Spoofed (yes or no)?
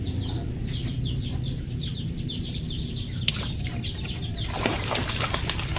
yes